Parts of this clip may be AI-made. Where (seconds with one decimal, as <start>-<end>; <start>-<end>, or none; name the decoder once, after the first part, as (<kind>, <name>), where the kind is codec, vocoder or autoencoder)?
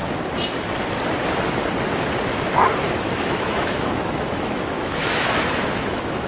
3.0-6.3 (autoencoder, DAC-VAE)